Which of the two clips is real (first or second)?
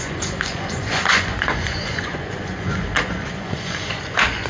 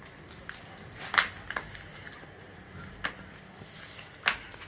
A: second